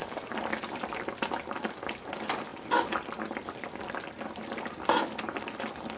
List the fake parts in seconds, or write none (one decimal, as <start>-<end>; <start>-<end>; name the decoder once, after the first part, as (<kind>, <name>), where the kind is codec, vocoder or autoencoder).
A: none